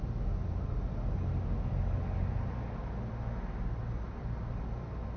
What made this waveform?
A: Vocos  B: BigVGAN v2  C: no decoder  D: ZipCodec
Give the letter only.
C